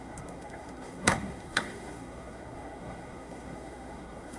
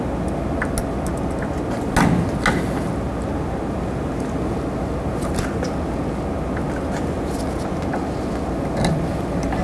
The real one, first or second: second